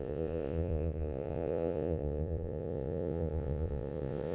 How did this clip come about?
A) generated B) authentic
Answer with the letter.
A